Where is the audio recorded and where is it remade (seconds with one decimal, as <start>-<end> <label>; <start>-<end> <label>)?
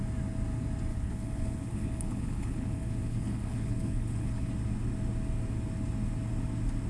0.0-0.9 recorded; 0.9-4.5 remade; 4.5-6.9 recorded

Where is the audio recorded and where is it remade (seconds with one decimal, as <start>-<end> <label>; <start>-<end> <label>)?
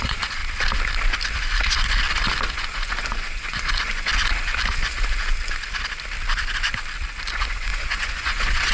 0.0-0.4 remade; 0.4-2.5 recorded; 2.5-4.1 remade; 4.1-7.3 recorded; 7.3-8.7 remade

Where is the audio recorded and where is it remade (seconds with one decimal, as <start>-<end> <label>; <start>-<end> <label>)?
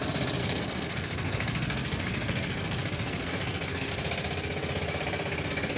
0.0-0.4 recorded; 0.4-3.9 remade; 3.9-5.8 recorded